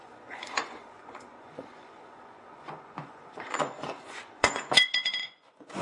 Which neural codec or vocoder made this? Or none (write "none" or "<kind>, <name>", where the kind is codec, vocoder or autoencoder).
vocoder, Vocos